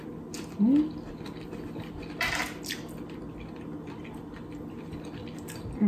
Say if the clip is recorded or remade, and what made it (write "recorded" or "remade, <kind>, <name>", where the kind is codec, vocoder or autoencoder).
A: recorded